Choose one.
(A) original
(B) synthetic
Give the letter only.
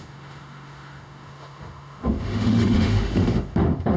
B